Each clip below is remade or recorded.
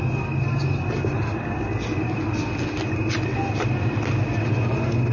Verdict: recorded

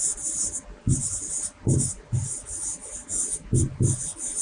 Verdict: recorded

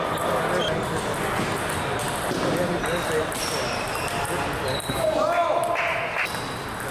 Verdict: recorded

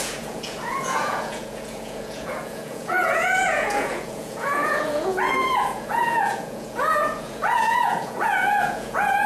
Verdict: remade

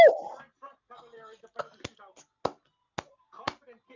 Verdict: recorded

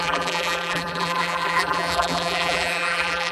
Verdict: remade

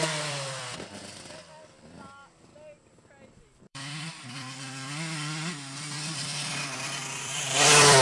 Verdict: remade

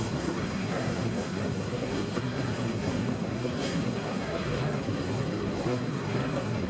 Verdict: remade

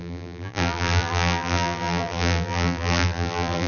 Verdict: remade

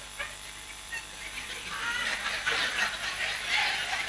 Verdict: remade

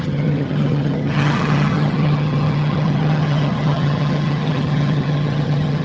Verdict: remade